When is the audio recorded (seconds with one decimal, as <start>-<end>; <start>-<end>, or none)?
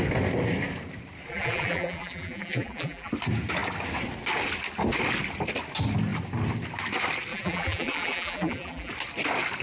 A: 0.0-1.3; 3.1-7.3; 8.9-9.6